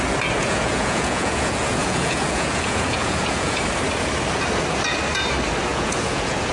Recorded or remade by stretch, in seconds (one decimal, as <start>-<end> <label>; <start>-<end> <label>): 0.0-0.4 recorded; 0.4-3.6 remade; 3.6-5.7 recorded; 5.7-6.5 remade